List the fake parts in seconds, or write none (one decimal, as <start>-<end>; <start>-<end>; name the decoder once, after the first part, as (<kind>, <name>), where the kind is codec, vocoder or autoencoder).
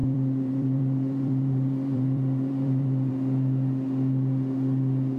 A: 0.0-3.1 (vocoder, BigVGAN v2)